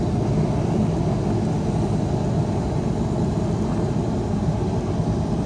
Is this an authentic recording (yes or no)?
yes